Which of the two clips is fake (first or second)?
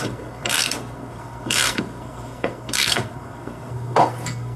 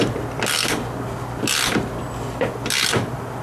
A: first